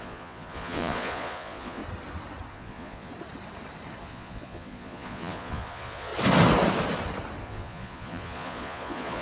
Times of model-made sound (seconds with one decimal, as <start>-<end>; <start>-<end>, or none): 0.0-1.8; 2.5-3.1; 4.0-6.1; 7.4-9.2